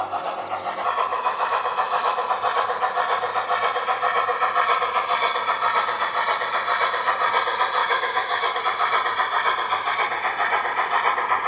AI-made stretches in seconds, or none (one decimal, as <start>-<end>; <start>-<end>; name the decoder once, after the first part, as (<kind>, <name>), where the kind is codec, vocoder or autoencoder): 1.1-2.3 (autoencoder, DAC-VAE); 7.8-8.6